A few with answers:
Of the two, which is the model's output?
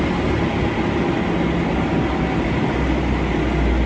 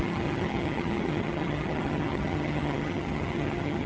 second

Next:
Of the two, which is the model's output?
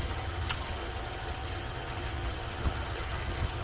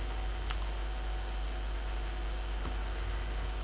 first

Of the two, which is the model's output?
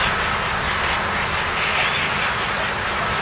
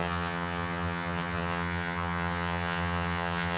second